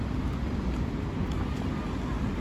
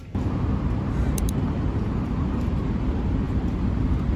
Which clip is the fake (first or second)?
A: second